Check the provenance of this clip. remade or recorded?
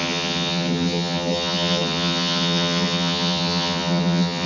remade